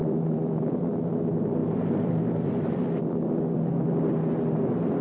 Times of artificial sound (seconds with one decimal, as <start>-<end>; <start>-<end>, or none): 0.0-0.8; 1.6-2.9